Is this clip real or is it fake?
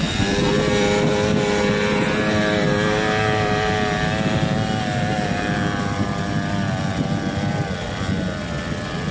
real